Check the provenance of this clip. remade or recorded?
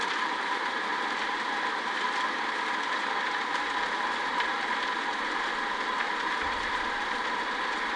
remade